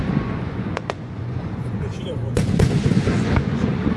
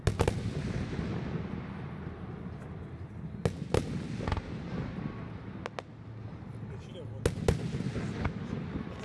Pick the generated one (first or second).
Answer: first